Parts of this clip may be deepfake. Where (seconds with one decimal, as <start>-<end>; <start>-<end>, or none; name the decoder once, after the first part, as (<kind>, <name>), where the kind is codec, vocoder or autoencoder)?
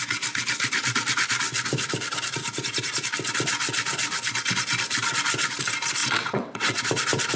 6.0-6.8 (vocoder, WaveNeXt)